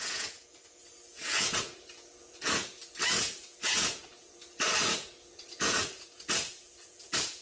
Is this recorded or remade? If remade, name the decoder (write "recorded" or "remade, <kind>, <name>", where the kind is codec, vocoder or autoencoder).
remade, vocoder, Vocos